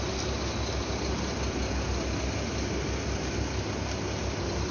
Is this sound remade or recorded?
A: recorded